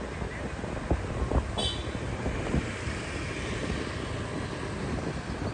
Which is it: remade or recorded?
recorded